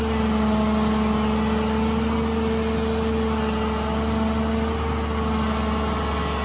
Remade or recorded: recorded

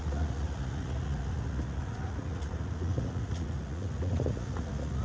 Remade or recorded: remade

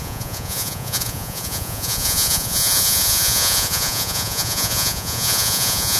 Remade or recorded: remade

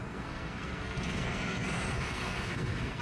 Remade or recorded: remade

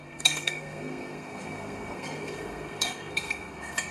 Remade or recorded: remade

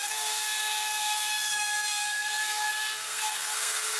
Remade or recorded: remade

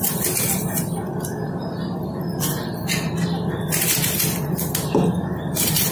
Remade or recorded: recorded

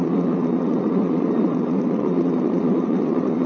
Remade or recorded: remade